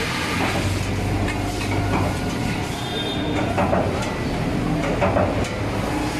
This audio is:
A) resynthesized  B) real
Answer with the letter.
B